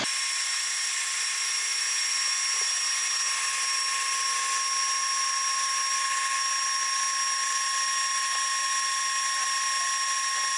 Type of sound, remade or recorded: recorded